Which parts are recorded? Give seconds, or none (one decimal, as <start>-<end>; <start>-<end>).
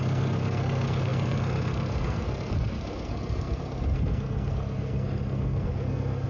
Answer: none